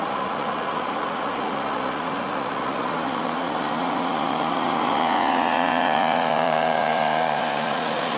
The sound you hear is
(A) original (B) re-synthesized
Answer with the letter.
B